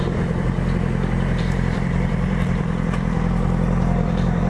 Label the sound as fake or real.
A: fake